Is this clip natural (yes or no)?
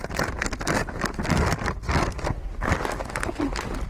yes